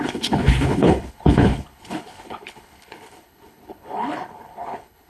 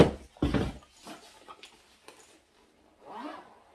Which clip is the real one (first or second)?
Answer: second